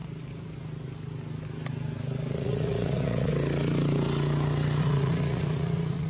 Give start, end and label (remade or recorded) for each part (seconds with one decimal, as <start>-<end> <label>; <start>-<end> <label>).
0.0-2.3 recorded; 2.3-3.3 remade; 3.3-4.8 recorded; 4.8-6.1 remade